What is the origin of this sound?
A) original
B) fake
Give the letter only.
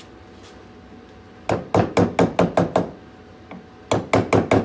A